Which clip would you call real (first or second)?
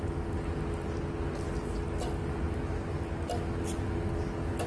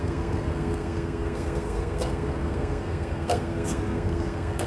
first